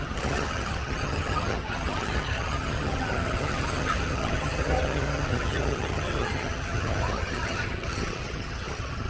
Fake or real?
fake